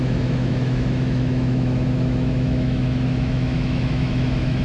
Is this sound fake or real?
fake